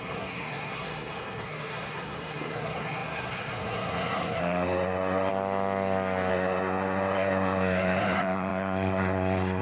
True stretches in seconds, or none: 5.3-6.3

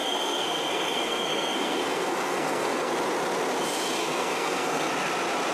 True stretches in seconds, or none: 2.9-4.0; 4.9-5.5

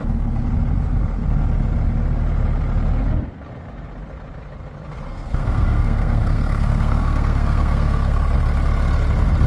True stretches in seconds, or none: 0.0-5.1; 8.2-9.5

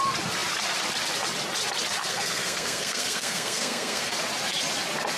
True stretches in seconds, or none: 0.0-2.0; 4.1-5.2

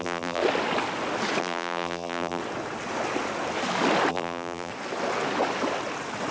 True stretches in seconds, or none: 0.4-1.4; 2.4-4.1; 4.7-6.3